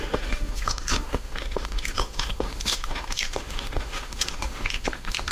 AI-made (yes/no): yes